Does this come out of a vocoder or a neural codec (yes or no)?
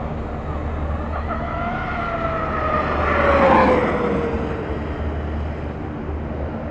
no